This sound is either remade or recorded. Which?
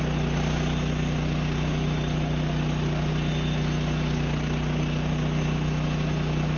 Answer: recorded